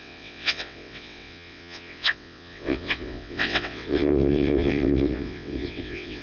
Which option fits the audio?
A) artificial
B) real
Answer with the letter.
A